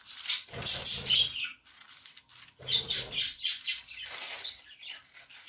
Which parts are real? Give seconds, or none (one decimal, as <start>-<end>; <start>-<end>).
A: 1.1-5.5